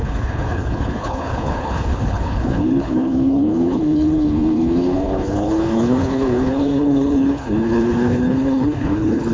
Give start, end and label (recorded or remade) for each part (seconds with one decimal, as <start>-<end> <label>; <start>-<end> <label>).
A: 0.0-9.3 remade